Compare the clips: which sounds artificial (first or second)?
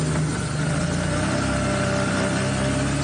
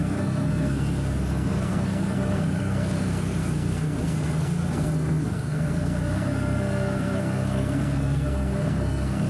second